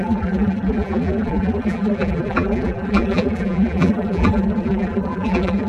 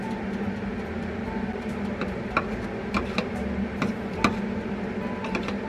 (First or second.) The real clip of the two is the second